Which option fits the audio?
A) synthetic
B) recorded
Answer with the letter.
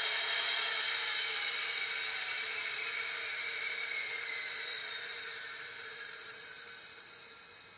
A